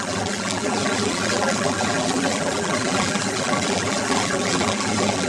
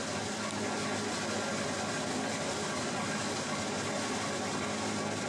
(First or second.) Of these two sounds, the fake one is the first